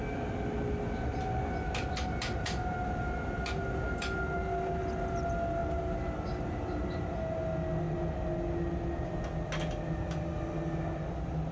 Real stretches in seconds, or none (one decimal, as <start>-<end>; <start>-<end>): 0.0-11.5